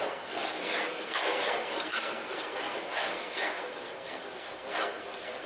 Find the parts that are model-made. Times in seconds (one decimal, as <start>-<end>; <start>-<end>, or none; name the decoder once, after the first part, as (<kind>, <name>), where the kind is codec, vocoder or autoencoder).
0.0-5.5 (codec, SNAC)